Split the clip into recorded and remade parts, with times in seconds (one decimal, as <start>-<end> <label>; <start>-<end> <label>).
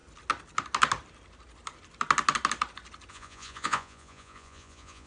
0.0-3.1 recorded; 3.1-5.1 remade